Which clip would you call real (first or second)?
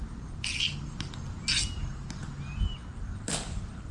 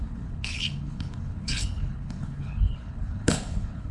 first